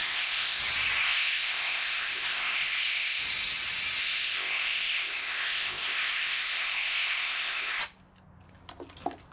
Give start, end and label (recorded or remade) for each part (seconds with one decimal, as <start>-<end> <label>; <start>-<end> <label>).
0.0-0.6 remade; 0.6-1.0 recorded; 1.0-3.2 remade; 3.2-4.0 recorded; 4.0-7.8 remade; 7.8-9.3 recorded